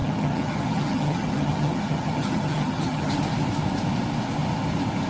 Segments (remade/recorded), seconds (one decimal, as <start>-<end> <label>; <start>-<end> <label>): 0.0-3.1 remade; 3.1-5.1 recorded